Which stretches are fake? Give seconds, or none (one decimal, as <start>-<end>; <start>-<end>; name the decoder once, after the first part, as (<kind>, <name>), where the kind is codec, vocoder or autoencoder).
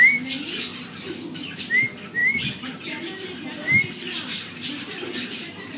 0.7-1.6 (vocoder, BigVGAN v2); 2.2-5.8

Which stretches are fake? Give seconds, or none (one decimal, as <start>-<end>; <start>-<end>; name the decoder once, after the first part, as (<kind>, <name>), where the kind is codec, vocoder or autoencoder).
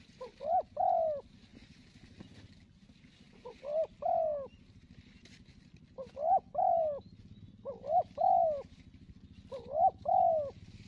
none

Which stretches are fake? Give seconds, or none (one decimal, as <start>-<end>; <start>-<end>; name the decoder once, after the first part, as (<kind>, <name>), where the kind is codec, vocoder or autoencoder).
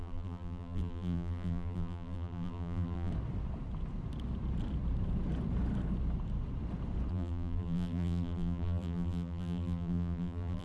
0.0-3.1 (vocoder, BigVGAN v2); 7.1-10.6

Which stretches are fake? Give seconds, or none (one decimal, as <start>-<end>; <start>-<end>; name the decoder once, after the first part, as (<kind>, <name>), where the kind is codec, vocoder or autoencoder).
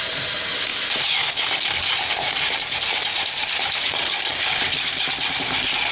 0.0-4.3 (vocoder, BigVGAN v2); 5.4-5.9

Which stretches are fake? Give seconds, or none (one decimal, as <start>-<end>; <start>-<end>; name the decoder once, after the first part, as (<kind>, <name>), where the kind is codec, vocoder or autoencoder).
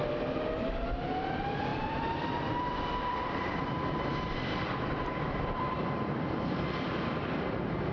1.7-6.4 (vocoder, BigVGAN v2)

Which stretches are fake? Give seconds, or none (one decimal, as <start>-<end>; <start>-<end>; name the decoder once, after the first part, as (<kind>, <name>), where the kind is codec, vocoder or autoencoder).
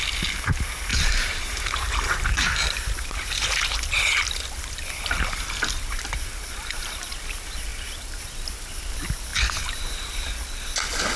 0.9-3.8 (vocoder, BigVGAN v2); 7.7-8.8; 9.3-10.3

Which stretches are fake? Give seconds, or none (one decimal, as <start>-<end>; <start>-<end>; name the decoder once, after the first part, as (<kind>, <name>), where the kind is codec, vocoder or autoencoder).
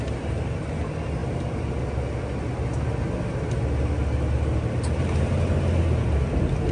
none